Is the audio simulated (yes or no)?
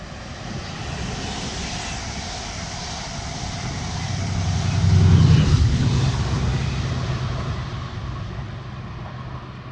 no